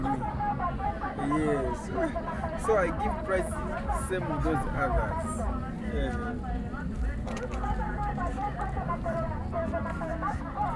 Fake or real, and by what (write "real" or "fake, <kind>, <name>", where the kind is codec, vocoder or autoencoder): real